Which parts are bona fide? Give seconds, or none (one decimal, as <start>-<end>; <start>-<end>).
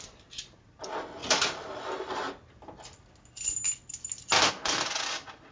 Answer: 0.0-5.5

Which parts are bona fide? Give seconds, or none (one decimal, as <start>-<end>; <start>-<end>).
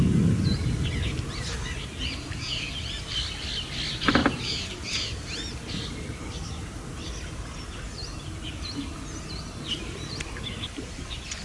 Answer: 0.0-4.2; 6.2-11.4